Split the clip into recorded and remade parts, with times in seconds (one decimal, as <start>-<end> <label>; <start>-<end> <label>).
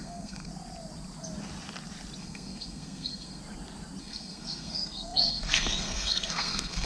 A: 0.0-0.5 remade; 0.5-2.2 recorded; 2.2-3.4 remade; 3.4-4.0 recorded; 4.0-6.9 remade